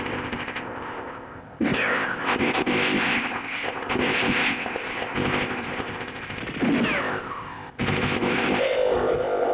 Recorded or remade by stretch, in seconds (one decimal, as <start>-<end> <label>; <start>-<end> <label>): 0.0-6.4 remade; 6.4-7.0 recorded; 7.0-9.5 remade